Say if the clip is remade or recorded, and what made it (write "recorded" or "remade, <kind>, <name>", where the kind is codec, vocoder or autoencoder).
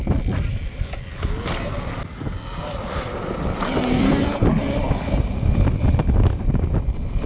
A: remade, vocoder, BigVGAN v2